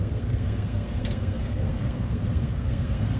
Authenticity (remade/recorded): remade